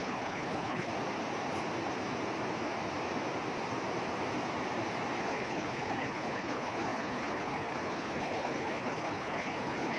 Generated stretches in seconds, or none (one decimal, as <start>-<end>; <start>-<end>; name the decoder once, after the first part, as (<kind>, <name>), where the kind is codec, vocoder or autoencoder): 0.0-0.9 (codec, HILCodec); 5.2-10.0